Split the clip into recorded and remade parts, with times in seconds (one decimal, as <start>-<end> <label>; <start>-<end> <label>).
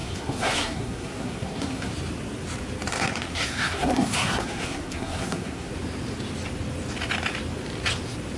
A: 0.0-1.9 remade; 1.9-2.9 recorded; 2.9-5.7 remade; 5.7-8.4 recorded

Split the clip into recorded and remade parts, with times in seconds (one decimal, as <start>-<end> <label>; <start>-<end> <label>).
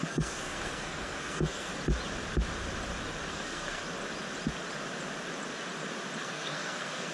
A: 0.0-1.7 remade; 1.7-3.3 recorded; 3.3-3.8 remade; 3.8-6.2 recorded; 6.2-7.1 remade